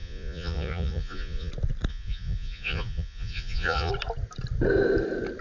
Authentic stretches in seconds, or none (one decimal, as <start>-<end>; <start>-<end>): 1.5-1.9; 3.9-5.4